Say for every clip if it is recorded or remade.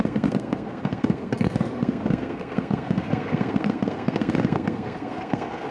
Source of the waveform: remade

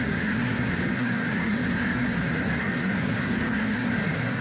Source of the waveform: remade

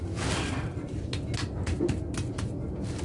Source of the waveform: recorded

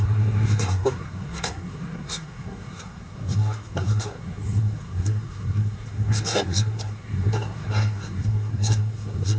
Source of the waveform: remade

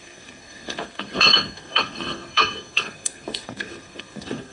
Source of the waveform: remade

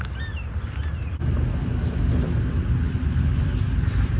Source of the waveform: recorded